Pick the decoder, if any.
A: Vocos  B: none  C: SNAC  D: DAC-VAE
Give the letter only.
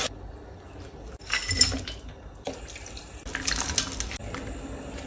B